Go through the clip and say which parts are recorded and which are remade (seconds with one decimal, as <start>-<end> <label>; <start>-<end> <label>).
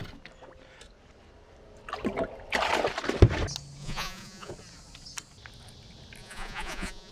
0.0-3.8 recorded; 3.8-4.5 remade; 4.5-6.2 recorded; 6.2-7.1 remade